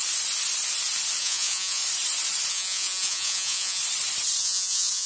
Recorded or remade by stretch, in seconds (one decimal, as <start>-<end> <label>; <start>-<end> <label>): 0.0-1.2 recorded; 1.2-1.8 remade; 1.8-2.5 recorded; 2.5-3.8 remade; 3.8-4.4 recorded; 4.4-5.1 remade